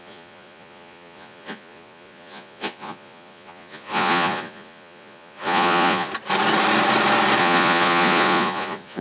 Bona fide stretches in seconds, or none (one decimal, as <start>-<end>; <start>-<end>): 6.1-7.4